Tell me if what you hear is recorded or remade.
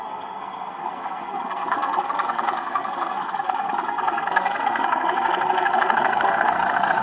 remade